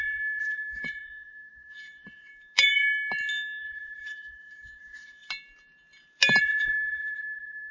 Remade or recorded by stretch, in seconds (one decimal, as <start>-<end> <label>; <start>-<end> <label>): 0.0-2.3 remade; 2.3-3.6 recorded; 3.6-5.2 remade; 5.2-6.4 recorded; 6.4-7.7 remade